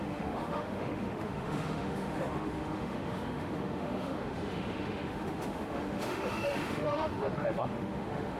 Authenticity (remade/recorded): remade